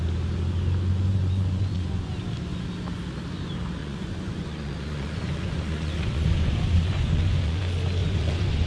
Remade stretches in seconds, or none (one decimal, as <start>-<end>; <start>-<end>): 1.1-2.1; 3.8-7.6; 8.0-8.7